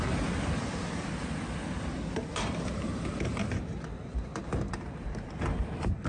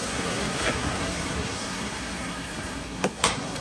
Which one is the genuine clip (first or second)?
first